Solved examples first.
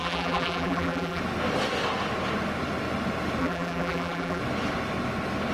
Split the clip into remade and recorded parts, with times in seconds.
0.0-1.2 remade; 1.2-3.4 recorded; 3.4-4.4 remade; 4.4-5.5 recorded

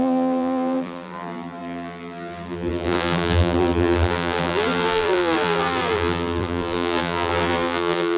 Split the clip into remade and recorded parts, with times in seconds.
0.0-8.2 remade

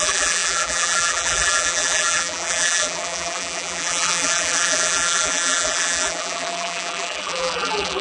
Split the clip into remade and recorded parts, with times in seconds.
0.0-8.0 remade

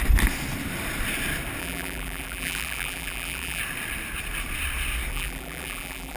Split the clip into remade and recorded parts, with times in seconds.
0.0-1.6 recorded; 1.6-3.6 remade; 3.6-5.1 recorded; 5.1-6.2 remade

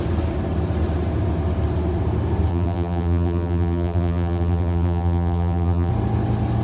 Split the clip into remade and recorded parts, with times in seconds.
0.0-2.5 recorded; 2.5-5.9 remade; 5.9-6.6 recorded

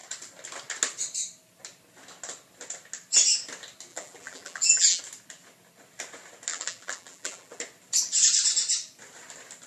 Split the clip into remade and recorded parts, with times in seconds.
0.0-3.9 recorded; 3.9-5.0 remade; 5.0-6.5 recorded; 6.5-7.6 remade; 7.6-9.7 recorded